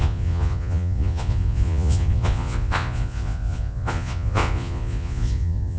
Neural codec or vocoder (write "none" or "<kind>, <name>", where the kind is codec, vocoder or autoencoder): vocoder, Vocos